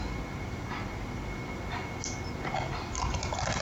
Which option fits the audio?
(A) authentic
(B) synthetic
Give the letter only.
A